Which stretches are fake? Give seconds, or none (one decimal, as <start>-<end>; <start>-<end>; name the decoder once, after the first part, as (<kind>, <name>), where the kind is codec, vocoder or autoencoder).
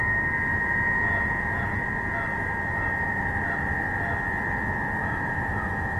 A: 0.5-1.8 (vocoder, Vocos); 5.0-6.0